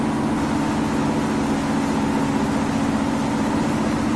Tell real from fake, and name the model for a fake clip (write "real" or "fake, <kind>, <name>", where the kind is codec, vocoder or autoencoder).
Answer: real